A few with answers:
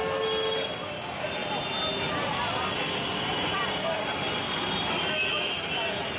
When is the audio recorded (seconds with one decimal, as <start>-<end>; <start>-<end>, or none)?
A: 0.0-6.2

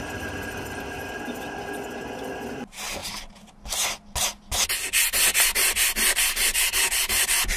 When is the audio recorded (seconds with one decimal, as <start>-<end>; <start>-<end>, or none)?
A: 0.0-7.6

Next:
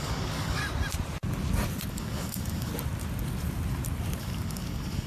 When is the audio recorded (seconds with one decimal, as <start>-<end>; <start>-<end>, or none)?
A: 0.6-1.9; 2.7-4.2